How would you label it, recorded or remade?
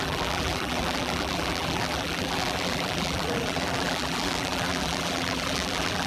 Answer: remade